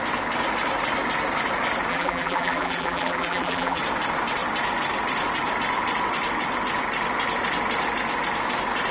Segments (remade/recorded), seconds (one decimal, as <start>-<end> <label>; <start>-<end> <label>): 0.0-1.9 recorded; 1.9-3.8 remade; 3.8-8.9 recorded